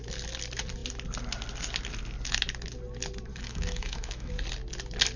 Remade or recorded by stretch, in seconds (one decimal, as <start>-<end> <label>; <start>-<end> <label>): 0.0-3.3 recorded; 3.3-4.3 remade; 4.3-5.2 recorded